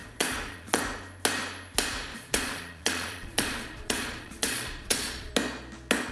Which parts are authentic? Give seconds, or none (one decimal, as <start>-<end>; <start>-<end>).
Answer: 0.8-2.1; 5.3-6.1